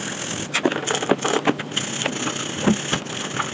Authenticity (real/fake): real